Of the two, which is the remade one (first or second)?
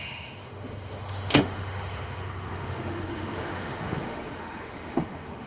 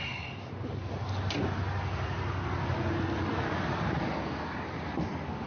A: first